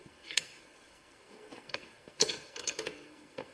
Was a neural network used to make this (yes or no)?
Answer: yes